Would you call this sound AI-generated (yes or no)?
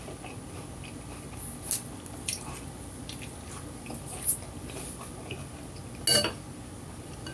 no